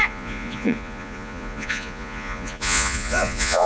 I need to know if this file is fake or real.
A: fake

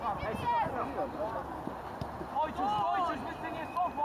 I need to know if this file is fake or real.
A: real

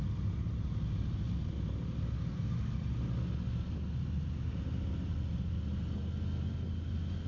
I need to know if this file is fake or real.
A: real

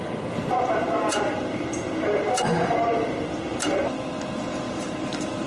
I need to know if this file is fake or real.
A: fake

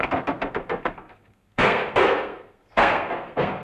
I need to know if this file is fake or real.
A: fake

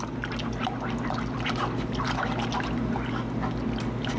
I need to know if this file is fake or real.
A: real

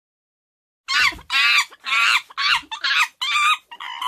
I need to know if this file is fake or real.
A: real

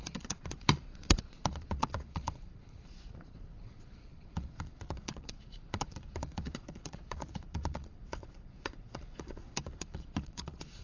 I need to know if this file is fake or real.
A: fake